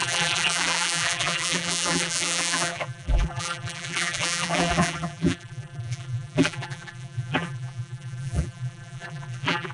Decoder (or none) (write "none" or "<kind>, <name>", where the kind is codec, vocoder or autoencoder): vocoder, BigVGAN v2